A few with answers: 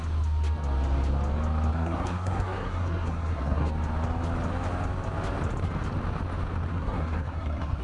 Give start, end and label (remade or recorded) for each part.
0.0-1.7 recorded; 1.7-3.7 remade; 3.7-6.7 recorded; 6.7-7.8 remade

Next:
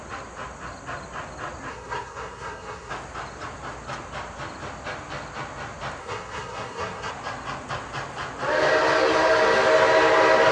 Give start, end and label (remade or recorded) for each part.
0.0-1.7 recorded; 1.7-2.9 remade; 2.9-6.0 recorded; 6.0-7.1 remade; 7.1-10.5 recorded